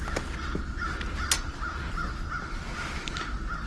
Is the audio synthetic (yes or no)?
no